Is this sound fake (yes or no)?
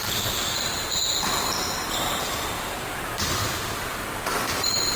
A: yes